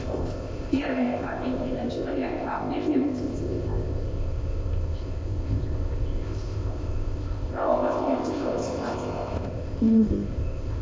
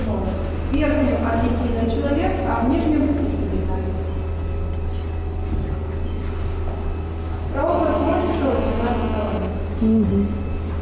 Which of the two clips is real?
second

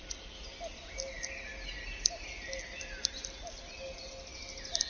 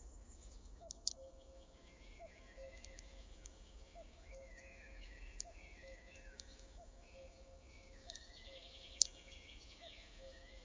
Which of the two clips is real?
first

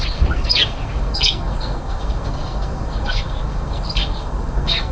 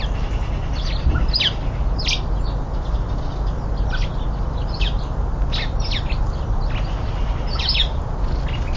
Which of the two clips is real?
second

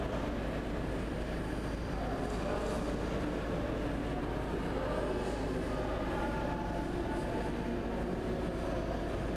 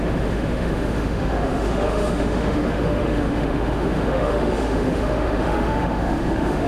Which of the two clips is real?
first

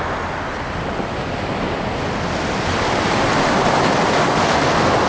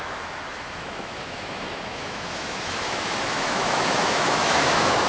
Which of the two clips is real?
first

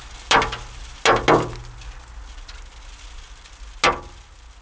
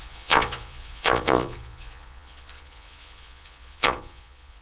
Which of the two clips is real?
first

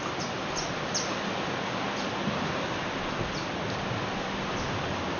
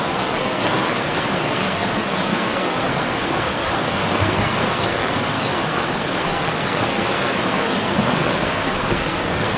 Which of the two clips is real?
first